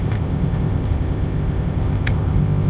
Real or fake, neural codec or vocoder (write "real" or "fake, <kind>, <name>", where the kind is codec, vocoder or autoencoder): fake, codec, ZipCodec